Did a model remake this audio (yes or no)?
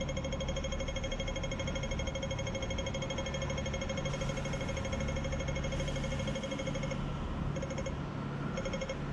no